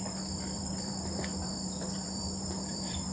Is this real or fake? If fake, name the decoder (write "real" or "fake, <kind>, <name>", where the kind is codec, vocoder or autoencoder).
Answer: fake, vocoder, BigVGAN v2